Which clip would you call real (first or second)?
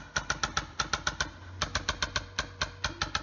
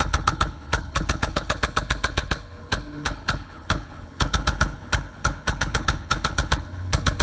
first